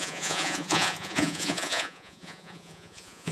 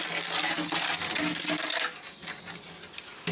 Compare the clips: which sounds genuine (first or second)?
second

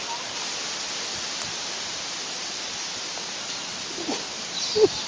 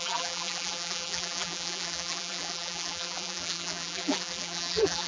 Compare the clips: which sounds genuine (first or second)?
first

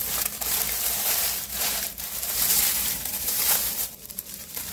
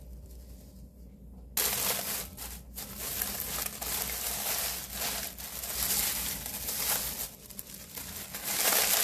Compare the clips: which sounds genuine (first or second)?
second